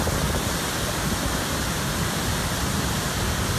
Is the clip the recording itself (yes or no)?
yes